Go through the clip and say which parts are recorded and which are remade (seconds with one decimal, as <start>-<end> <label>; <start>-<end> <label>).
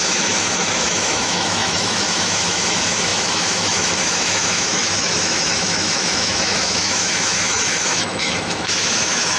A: 0.0-9.4 remade